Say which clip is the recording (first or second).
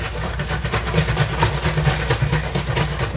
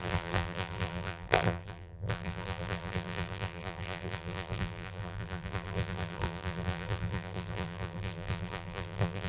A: first